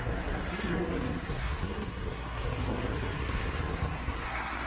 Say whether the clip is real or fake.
fake